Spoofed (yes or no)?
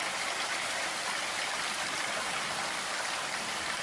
no